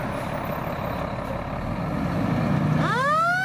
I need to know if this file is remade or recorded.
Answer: recorded